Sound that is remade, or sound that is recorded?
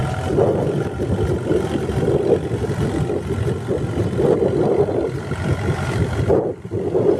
recorded